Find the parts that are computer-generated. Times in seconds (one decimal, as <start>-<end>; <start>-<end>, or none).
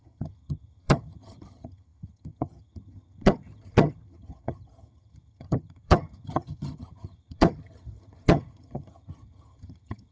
0.0-10.1